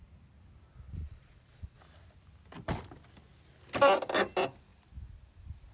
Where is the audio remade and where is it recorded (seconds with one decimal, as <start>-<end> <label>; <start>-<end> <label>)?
0.0-1.0 recorded; 1.0-1.8 remade; 1.8-5.7 recorded